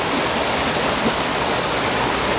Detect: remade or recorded recorded